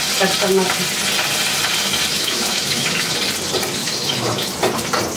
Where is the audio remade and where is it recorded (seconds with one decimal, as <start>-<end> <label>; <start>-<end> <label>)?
0.0-2.1 recorded; 2.1-3.1 remade; 3.1-3.8 recorded; 3.8-4.5 remade; 4.5-5.2 recorded